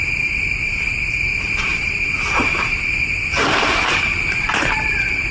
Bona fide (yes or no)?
no